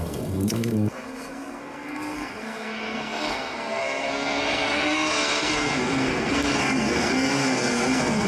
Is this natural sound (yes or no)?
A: no